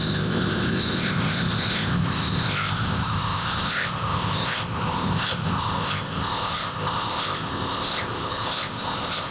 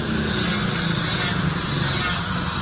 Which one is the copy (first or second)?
first